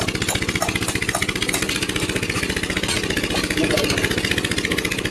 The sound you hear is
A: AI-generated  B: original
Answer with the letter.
B